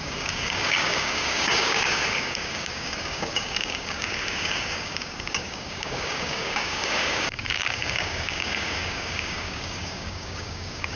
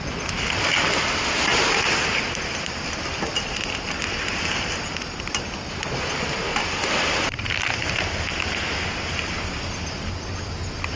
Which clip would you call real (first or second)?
second